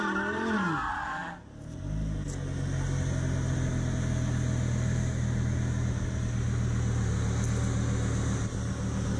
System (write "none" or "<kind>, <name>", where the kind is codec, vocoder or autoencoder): none